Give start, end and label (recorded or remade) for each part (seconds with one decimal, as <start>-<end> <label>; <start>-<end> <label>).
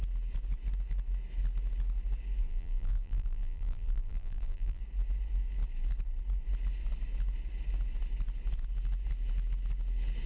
0.0-2.5 recorded; 2.5-4.8 remade; 4.8-10.3 recorded